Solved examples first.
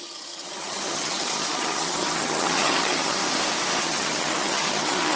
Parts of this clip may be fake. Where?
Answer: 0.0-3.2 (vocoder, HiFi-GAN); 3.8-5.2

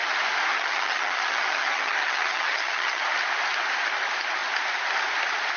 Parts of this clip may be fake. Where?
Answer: 0.5-3.0 (vocoder, HiFi-GAN)